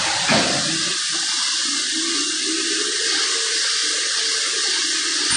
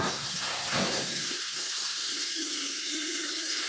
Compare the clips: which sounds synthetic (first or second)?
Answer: second